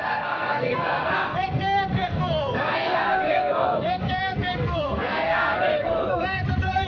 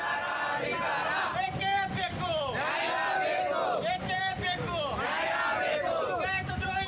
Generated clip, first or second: first